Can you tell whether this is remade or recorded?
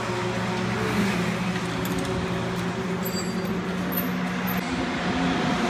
recorded